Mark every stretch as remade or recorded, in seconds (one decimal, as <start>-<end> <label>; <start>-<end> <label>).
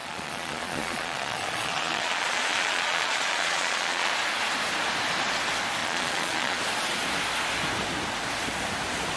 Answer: 0.0-4.1 remade; 4.1-5.8 recorded; 5.8-6.6 remade; 6.6-9.2 recorded